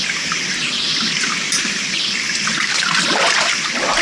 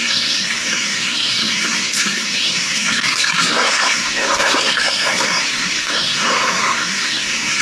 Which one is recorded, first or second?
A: first